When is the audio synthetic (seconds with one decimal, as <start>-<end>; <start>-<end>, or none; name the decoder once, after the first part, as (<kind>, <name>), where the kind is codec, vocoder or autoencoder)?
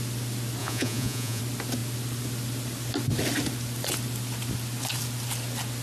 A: 0.6-1.4 (vocoder, Vocos)